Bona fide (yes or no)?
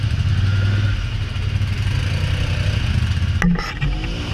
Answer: yes